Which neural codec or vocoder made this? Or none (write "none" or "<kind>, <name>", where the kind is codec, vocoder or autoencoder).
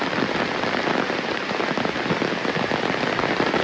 none